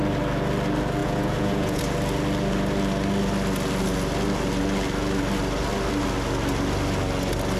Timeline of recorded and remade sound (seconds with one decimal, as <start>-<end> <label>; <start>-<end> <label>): 0.0-1.0 recorded; 1.0-1.8 remade; 1.8-7.6 recorded